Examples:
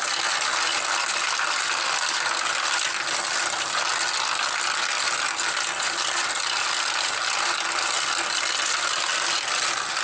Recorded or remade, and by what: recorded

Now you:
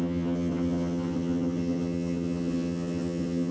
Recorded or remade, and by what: remade, vocoder, HiFi-GAN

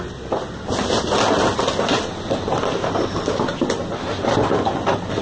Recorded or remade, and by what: recorded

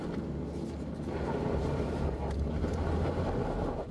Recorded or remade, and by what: recorded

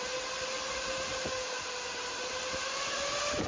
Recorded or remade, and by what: recorded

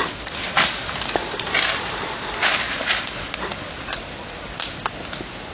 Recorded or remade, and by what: recorded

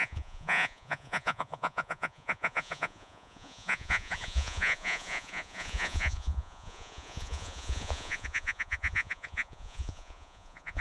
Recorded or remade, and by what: remade, vocoder, Vocos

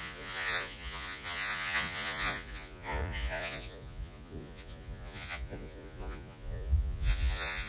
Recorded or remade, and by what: remade, vocoder, Vocos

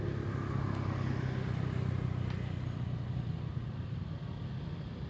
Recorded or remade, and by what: recorded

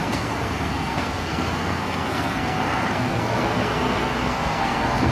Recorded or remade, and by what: remade, codec, SNAC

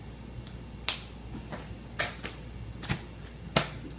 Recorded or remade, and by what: recorded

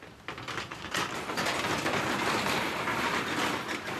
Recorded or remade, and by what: recorded